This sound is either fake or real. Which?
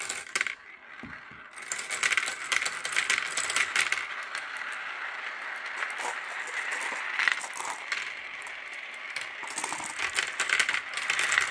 real